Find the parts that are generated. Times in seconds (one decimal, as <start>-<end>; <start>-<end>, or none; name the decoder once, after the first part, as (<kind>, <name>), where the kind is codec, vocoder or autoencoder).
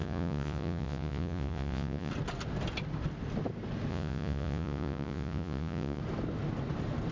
0.0-2.1 (vocoder, Vocos); 3.9-6.0